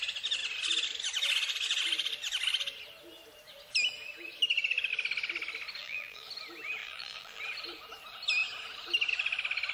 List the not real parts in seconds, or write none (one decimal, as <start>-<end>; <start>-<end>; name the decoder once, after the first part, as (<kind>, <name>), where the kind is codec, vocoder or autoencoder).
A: 5.8-6.3 (vocoder, BigVGAN v2); 6.8-7.4